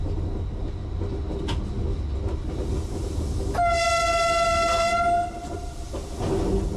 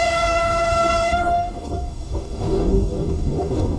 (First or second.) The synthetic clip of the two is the second